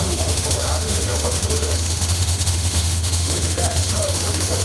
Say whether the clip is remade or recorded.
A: remade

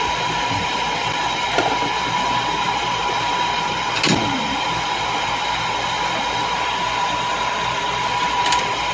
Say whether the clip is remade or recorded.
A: remade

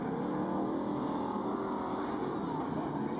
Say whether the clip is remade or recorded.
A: recorded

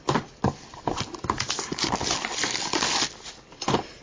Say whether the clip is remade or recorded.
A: remade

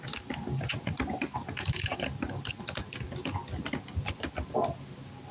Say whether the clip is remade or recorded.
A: recorded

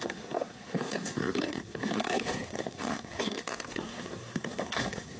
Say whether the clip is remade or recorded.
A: remade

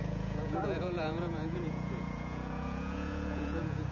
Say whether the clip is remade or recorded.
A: remade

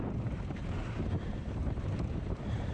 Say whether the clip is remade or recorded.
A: remade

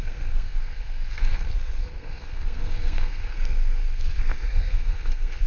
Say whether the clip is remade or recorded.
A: remade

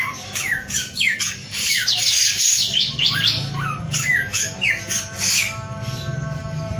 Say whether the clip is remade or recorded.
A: remade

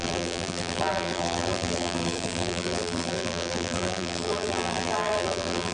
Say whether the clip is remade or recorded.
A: remade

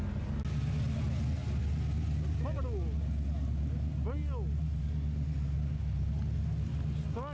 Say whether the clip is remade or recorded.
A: recorded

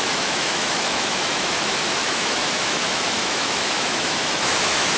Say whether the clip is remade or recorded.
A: remade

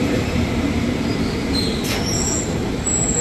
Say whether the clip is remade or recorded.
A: remade